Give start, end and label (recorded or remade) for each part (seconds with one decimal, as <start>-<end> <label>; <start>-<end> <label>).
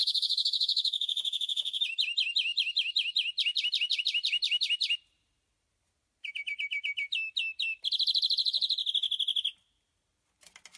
0.0-1.8 remade; 1.8-10.8 recorded